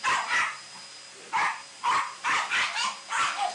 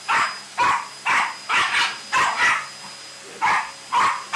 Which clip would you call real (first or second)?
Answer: second